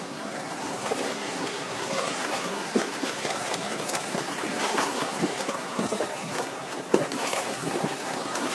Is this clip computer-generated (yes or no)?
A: yes